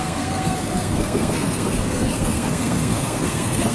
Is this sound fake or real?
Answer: fake